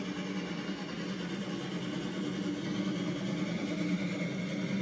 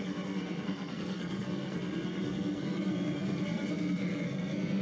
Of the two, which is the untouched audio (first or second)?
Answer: first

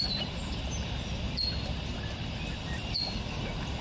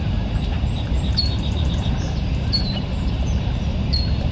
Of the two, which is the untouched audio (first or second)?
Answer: first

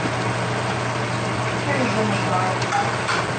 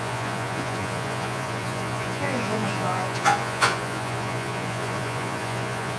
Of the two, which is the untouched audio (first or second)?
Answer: first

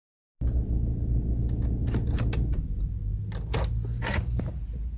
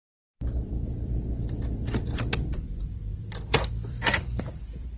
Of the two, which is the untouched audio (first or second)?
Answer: first